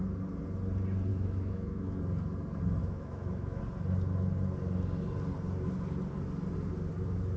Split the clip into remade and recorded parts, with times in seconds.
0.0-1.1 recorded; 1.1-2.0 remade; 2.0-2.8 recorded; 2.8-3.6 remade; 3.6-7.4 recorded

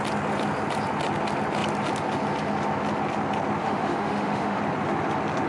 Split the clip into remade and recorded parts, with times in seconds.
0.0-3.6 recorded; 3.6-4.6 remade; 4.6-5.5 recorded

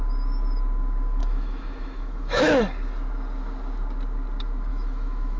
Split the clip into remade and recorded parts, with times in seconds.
0.0-1.2 recorded; 1.2-2.4 remade; 2.4-4.7 recorded; 4.7-5.4 remade